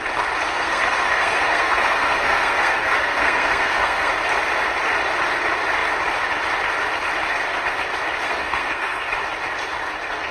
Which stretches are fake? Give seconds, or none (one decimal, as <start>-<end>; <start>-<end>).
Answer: 0.5-4.1; 8.2-9.1